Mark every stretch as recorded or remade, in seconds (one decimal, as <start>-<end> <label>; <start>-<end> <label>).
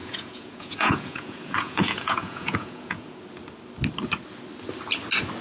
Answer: 0.0-3.2 remade; 3.2-5.4 recorded